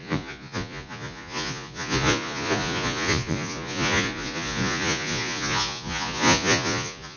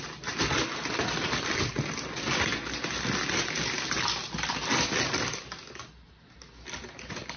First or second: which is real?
second